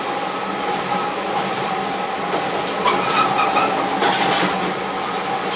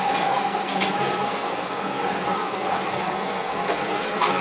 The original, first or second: first